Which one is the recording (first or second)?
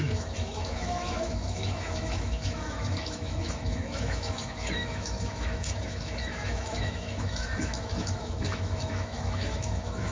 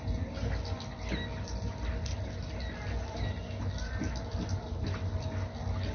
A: second